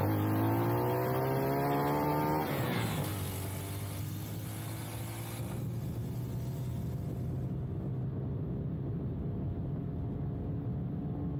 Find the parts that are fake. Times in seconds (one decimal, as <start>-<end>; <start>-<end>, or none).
none